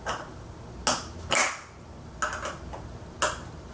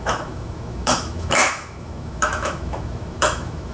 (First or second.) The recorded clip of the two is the first